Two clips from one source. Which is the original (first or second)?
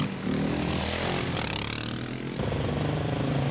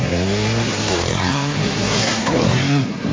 first